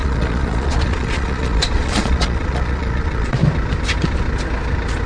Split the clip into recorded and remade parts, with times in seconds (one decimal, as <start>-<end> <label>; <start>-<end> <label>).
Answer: 0.0-3.4 remade; 3.4-5.1 recorded